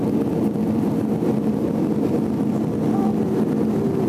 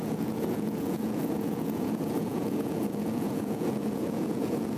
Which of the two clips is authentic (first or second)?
first